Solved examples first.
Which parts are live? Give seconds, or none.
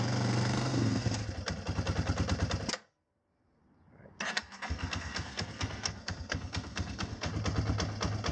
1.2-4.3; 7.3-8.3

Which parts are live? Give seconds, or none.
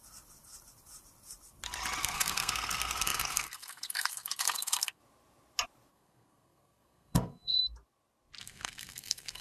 0.0-2.0; 5.0-5.9; 7.6-8.4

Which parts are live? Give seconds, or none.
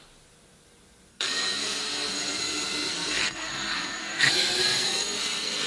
0.0-1.1; 2.4-2.9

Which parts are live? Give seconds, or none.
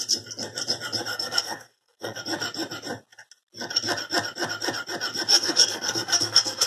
0.0-1.1; 2.2-5.3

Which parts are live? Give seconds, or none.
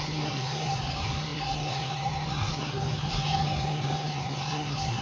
none